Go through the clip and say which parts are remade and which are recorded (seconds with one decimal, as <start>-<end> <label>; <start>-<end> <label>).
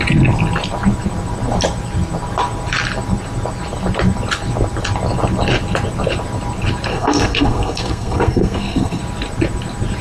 0.0-6.9 recorded; 6.9-9.0 remade; 9.0-10.0 recorded